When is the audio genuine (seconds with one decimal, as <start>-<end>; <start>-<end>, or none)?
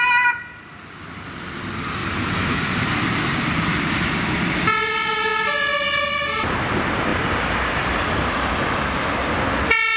0.0-2.0; 3.9-7.1; 8.5-10.0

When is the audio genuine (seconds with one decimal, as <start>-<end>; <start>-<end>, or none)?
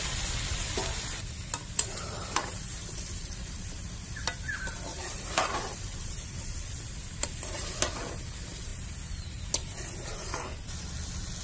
0.0-0.8; 3.4-4.9; 7.8-11.4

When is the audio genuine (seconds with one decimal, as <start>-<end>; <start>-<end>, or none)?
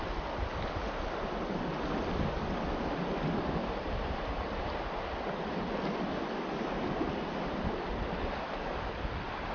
0.0-3.6; 4.2-9.5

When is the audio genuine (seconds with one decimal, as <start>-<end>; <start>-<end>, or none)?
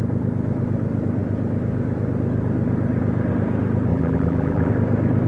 0.0-3.9; 4.7-5.3